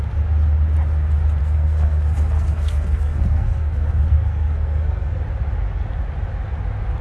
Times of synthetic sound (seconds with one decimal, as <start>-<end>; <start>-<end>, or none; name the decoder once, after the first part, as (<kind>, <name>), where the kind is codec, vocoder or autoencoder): 1.4-5.2 (codec, SNAC)